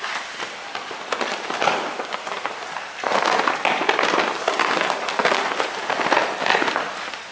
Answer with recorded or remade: recorded